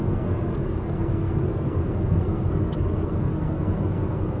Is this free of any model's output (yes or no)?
no